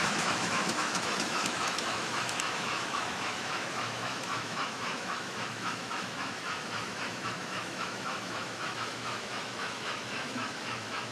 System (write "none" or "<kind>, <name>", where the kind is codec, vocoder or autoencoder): autoencoder, DAC-VAE